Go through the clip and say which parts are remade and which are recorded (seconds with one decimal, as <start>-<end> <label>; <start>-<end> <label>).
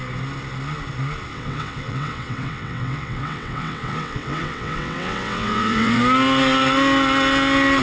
0.0-1.3 recorded; 1.3-6.0 remade; 6.0-7.8 recorded